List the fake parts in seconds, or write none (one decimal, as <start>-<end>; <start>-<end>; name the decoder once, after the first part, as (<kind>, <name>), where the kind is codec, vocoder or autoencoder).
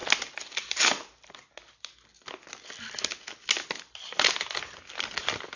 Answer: none